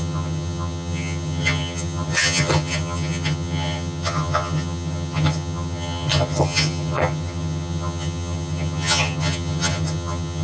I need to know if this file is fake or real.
fake